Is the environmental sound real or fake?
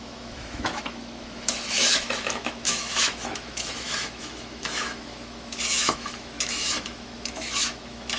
fake